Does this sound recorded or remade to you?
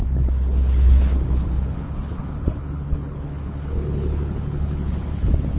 remade